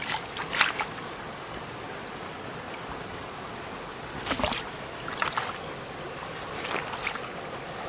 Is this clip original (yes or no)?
yes